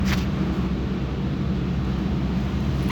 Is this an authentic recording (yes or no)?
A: yes